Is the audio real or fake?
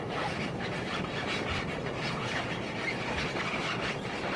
real